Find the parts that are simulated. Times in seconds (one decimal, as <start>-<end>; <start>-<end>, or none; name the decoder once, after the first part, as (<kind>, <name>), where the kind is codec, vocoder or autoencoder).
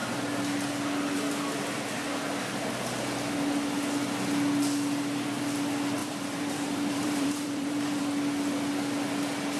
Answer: 6.0-8.0 (vocoder, BigVGAN v2)